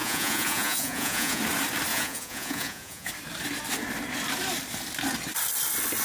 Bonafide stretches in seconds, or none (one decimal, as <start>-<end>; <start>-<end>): 1.4-1.9; 3.1-6.0